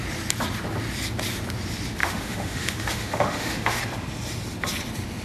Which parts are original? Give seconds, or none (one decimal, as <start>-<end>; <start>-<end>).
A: 0.0-2.0; 3.8-5.2